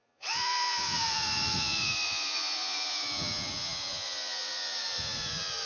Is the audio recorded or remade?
remade